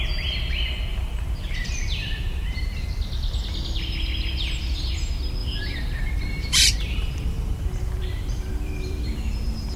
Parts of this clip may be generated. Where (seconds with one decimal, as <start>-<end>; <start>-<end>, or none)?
0.9-2.9; 5.4-9.8